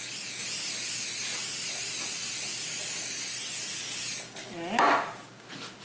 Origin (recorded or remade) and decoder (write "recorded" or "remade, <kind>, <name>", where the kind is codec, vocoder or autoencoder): recorded